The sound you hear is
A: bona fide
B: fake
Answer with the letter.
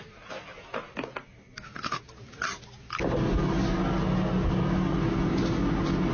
A